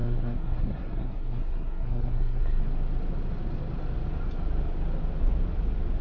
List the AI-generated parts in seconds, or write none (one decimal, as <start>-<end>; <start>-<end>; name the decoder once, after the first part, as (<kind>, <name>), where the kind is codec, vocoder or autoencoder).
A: 0.0-2.6 (codec, SNAC)